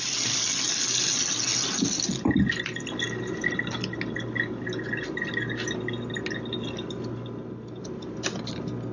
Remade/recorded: recorded